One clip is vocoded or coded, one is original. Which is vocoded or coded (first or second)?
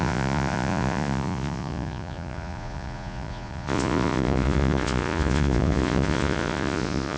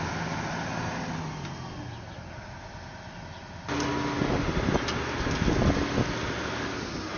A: first